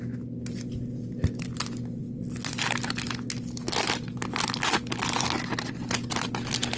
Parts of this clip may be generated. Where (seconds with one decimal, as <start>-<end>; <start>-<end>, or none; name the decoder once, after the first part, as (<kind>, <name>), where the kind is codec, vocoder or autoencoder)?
none